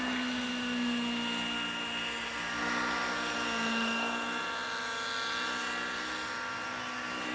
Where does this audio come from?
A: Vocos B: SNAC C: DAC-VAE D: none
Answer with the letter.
D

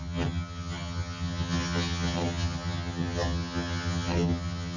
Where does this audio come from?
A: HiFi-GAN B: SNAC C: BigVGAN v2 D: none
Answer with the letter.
A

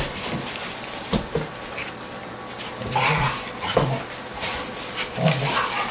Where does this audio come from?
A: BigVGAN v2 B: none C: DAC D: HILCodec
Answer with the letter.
B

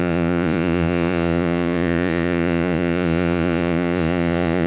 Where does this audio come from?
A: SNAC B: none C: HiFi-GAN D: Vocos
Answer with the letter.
D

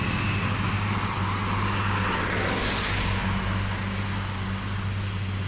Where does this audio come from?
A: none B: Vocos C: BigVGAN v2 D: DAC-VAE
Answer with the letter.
A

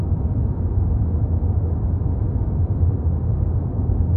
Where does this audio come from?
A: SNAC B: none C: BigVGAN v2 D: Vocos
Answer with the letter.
B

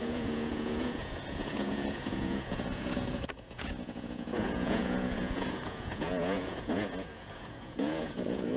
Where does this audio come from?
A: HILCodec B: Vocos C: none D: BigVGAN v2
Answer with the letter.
B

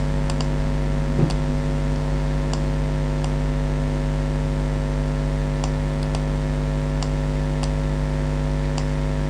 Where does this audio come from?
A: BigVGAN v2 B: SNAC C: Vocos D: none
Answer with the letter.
D